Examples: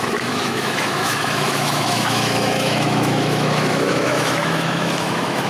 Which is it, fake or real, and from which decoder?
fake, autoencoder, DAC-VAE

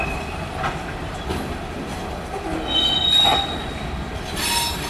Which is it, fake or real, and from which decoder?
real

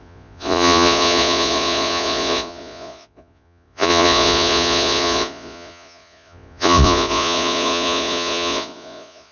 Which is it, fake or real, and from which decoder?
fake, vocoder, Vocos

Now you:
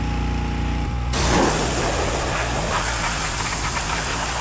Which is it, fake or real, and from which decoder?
real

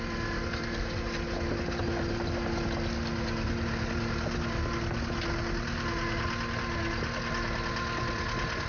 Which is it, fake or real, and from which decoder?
real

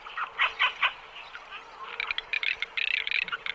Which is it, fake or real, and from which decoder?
real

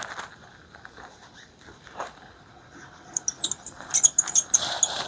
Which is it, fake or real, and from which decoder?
real